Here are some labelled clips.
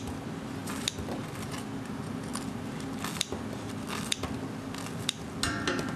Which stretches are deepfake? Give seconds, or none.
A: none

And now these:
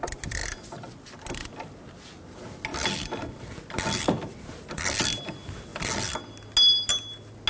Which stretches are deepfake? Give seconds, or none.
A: none